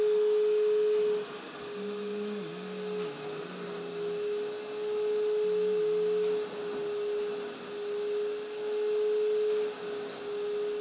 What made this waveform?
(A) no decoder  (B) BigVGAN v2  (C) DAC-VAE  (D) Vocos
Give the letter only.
A